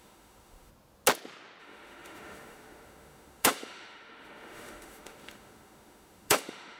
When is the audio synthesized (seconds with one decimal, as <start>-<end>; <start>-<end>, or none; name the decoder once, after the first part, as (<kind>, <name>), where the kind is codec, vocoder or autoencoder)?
0.0-0.7 (autoencoder, DAC-VAE); 1.6-6.8